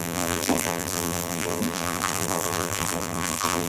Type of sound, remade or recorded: remade